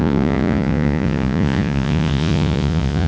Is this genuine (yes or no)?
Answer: no